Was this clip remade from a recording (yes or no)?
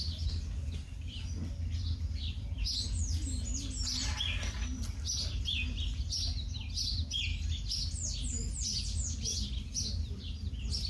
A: no